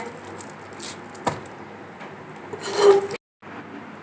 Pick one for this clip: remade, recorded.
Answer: recorded